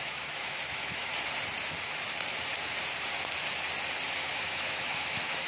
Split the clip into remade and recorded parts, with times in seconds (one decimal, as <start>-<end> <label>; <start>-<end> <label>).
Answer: 0.0-1.1 remade; 1.1-4.4 recorded; 4.4-5.5 remade